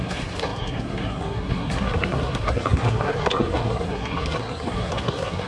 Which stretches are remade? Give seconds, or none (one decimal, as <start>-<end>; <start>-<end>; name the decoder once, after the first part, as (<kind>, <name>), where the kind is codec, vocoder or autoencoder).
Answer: 0.0-5.5 (codec, SNAC)